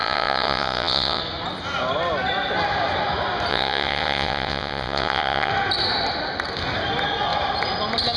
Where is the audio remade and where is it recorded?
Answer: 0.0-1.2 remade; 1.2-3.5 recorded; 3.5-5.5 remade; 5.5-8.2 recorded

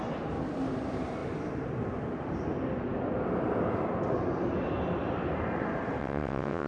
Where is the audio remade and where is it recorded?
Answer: 0.0-6.0 recorded; 6.0-6.7 remade

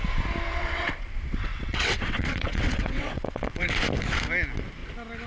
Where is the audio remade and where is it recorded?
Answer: 0.0-0.5 recorded; 0.5-3.7 remade; 3.7-5.3 recorded

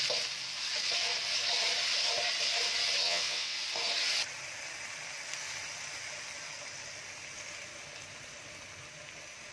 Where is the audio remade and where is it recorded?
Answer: 0.0-3.0 recorded; 3.0-3.6 remade; 3.6-9.5 recorded

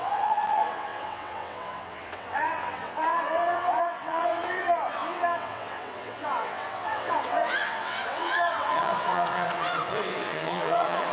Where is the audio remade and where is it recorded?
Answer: 0.0-11.1 remade

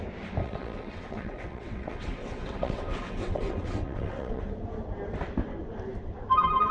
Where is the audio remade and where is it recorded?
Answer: 0.0-0.4 recorded; 0.4-4.4 remade; 4.4-6.7 recorded

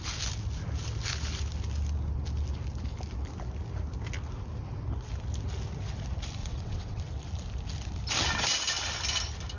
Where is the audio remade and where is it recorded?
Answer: 0.0-6.4 recorded; 6.4-7.0 remade; 7.0-9.6 recorded